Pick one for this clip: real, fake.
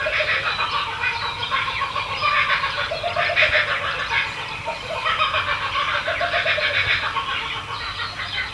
real